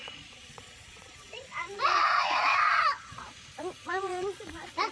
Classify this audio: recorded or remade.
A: remade